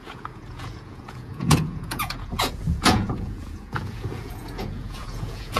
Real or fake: fake